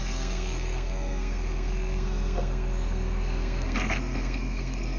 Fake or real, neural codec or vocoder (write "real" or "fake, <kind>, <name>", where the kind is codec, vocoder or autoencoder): fake, codec, SNAC